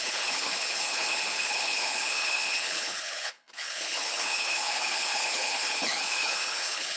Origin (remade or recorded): remade